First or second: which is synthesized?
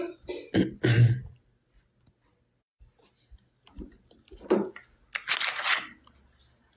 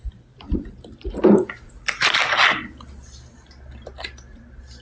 second